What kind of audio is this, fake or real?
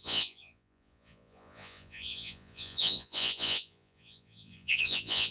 fake